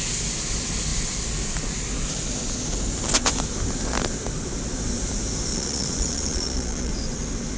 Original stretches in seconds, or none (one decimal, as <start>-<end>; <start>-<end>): 0.0-5.5; 6.9-7.6